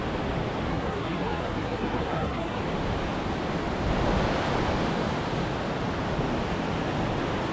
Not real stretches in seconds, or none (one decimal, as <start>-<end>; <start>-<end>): 0.7-2.6